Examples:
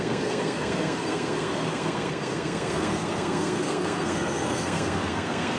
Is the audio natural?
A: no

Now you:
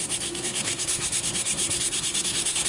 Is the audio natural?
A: no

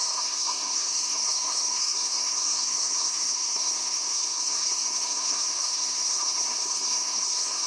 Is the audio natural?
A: no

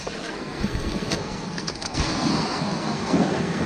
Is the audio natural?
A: no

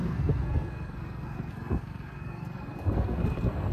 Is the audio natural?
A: no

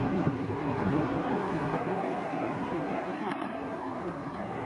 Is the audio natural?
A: no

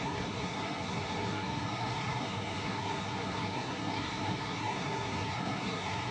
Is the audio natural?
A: no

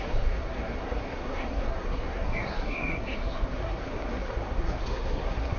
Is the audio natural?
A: no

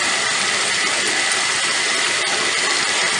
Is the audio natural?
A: yes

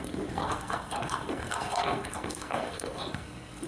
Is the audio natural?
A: no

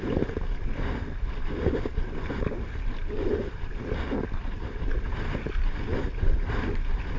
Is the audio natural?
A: yes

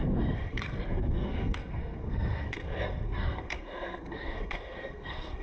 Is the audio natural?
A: no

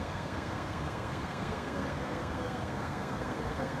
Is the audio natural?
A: no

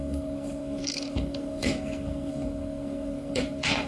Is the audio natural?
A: no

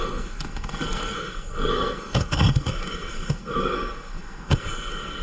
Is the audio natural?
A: no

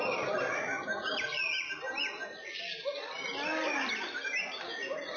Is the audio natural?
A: yes